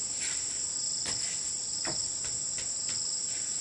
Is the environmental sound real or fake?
real